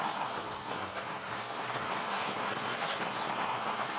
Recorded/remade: remade